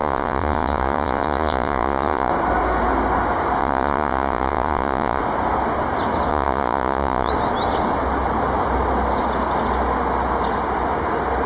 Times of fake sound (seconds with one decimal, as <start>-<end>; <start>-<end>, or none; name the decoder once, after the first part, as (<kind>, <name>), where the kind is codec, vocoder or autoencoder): 0.0-2.3 (vocoder, Vocos); 3.6-5.2; 6.3-7.3